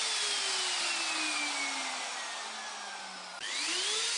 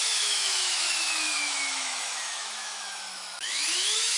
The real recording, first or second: first